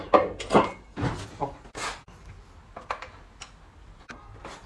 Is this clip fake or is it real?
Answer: real